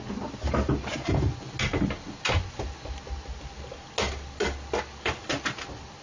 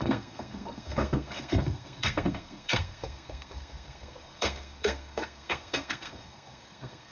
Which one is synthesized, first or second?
second